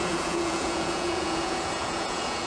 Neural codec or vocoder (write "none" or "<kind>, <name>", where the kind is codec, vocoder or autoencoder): vocoder, Vocos